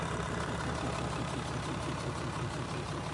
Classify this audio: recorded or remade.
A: remade